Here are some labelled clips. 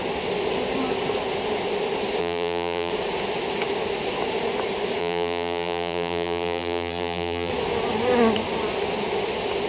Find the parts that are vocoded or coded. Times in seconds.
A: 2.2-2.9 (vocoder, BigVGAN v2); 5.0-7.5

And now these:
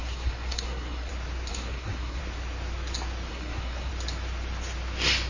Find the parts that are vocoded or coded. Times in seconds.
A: 0.0-1.1 (codec, SNAC); 1.5-2.2; 3.3-3.9

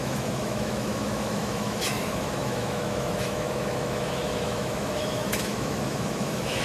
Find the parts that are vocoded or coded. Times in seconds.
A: 0.0-6.6 (autoencoder, DAC-VAE)

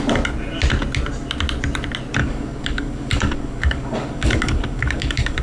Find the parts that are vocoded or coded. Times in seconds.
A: 2.2-5.4 (codec, DAC)